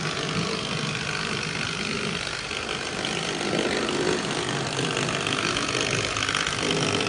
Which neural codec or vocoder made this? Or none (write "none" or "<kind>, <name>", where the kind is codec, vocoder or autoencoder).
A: vocoder, BigVGAN v2